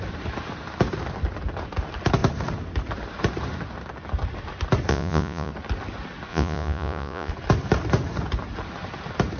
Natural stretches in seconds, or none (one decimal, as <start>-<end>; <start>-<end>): 0.0-4.9; 5.5-6.3; 7.3-9.4